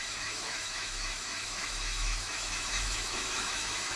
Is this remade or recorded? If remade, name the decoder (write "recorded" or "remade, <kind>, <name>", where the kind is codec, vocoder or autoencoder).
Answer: remade, autoencoder, DAC-VAE